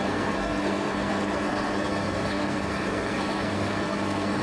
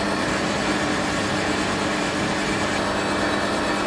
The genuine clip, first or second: second